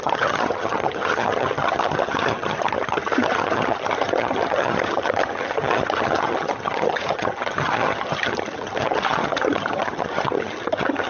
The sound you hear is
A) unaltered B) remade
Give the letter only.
B